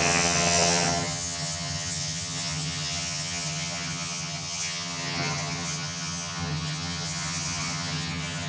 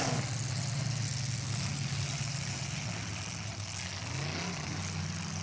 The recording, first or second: second